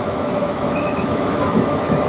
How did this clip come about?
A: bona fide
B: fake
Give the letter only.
B